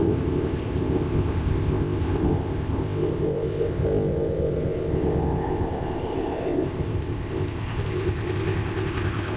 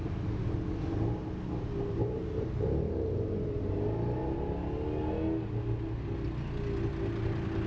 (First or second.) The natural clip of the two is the second